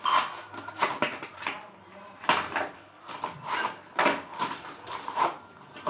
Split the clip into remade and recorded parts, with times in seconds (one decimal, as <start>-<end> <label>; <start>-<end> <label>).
0.0-1.1 recorded; 1.1-2.6 remade; 2.6-4.3 recorded; 4.3-5.4 remade; 5.4-5.9 recorded